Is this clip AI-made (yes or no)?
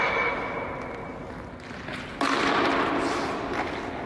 no